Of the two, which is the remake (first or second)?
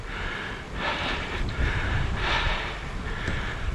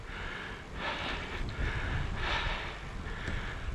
first